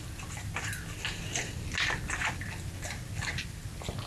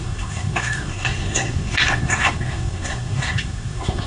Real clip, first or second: first